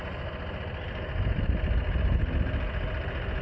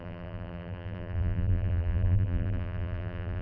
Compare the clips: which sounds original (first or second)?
first